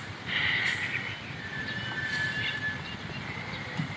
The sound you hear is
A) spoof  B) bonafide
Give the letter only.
B